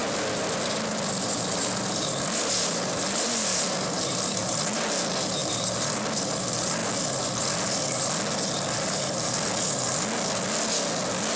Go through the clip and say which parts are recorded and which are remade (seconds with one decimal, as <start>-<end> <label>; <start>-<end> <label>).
0.0-4.6 remade; 4.6-5.4 recorded; 5.4-6.0 remade; 6.0-11.4 recorded